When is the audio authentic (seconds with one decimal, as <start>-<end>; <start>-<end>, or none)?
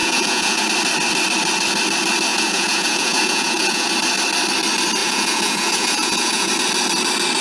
0.6-2.3; 3.9-5.0; 6.5-7.4